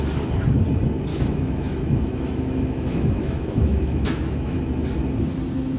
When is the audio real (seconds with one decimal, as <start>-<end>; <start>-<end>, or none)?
0.0-1.1; 4.6-5.8